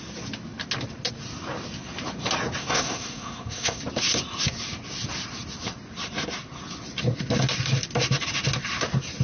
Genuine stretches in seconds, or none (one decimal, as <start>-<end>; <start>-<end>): 0.0-2.6; 3.8-9.2